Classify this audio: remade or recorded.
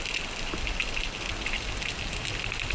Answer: recorded